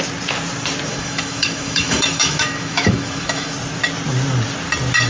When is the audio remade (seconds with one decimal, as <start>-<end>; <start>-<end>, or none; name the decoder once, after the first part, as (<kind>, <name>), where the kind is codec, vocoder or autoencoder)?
0.9-3.5 (autoencoder, DAC-VAE)

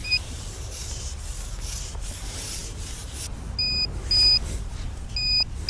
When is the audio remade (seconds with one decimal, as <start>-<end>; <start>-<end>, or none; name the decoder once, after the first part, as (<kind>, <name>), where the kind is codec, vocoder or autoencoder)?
0.0-1.1 (vocoder, BigVGAN v2)

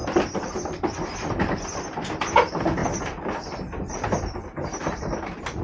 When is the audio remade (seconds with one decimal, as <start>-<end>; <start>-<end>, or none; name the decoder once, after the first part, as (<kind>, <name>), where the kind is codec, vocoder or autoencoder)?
0.0-1.4 (vocoder, BigVGAN v2); 2.8-5.6

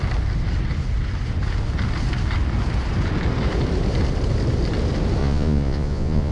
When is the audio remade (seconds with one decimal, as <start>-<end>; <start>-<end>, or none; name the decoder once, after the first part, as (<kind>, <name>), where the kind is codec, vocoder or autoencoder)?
5.2-6.3 (vocoder, Vocos)

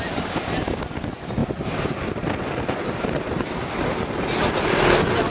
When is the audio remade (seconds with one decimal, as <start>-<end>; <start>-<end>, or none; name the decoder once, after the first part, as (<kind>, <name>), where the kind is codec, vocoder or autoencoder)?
none

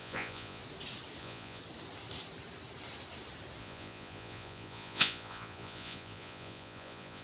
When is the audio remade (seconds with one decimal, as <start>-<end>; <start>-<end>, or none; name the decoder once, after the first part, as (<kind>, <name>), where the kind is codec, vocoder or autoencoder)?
0.0-0.6 (vocoder, Vocos); 1.2-1.6; 3.6-7.2

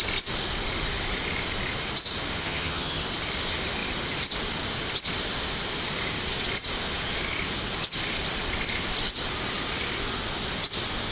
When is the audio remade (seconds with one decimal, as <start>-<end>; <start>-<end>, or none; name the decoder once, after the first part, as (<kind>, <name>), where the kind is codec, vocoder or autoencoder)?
2.3-3.0 (vocoder, HiFi-GAN)

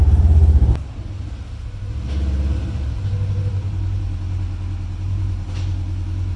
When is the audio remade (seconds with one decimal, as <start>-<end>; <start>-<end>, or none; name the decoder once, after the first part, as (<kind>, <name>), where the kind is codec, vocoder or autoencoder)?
none